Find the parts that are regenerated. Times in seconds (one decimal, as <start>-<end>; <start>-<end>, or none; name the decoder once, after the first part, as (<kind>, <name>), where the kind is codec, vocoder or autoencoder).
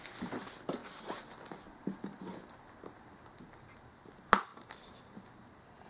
none